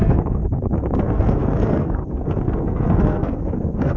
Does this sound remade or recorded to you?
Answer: remade